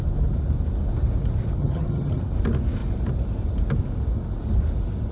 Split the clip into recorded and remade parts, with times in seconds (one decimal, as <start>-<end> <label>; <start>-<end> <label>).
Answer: 0.0-1.6 recorded; 1.6-2.2 remade; 2.2-5.1 recorded